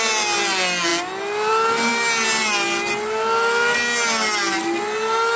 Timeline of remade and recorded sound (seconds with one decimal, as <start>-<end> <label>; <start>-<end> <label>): 0.0-5.4 recorded